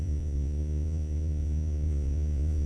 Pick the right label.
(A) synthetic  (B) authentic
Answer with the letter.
A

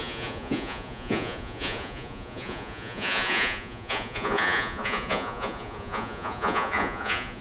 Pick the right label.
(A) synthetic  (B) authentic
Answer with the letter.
A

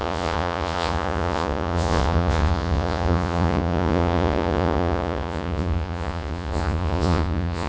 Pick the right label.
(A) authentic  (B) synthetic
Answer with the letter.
B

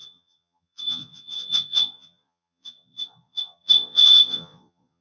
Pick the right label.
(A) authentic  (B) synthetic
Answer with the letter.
B